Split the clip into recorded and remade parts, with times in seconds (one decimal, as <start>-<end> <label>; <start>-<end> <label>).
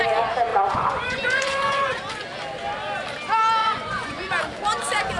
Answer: 0.0-0.5 recorded; 0.5-2.0 remade; 2.0-3.6 recorded; 3.6-4.3 remade; 4.3-5.2 recorded